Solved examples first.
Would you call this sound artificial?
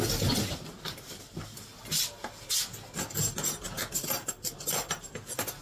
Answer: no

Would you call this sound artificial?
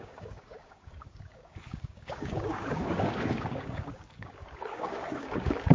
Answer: yes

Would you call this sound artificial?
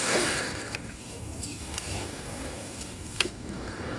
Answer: yes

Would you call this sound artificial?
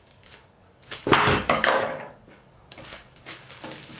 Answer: yes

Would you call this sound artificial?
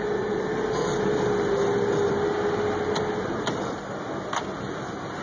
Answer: no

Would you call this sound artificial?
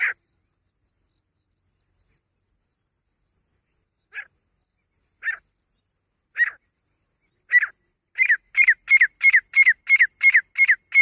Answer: no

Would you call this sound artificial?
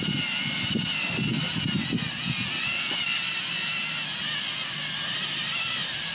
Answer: no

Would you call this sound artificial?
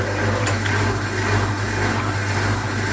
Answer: no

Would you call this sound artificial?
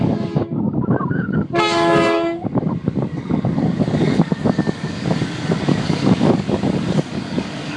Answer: yes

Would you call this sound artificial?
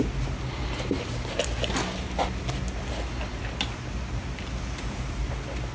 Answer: no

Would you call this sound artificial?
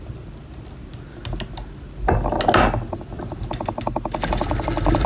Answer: no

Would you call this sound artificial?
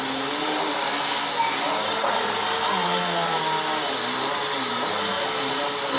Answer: no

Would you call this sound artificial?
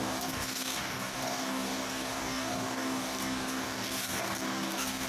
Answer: yes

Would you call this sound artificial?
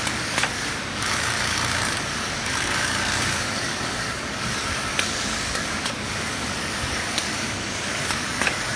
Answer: yes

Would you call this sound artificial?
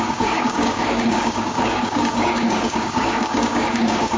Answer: yes